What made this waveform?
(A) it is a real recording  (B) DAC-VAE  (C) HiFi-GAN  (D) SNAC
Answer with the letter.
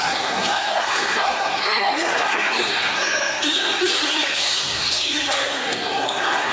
D